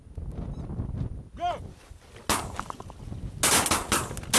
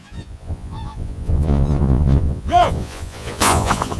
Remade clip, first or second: second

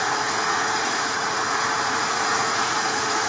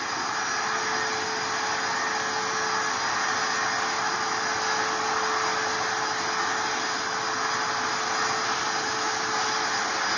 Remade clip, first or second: first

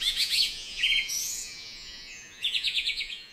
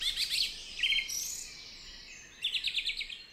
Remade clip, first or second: first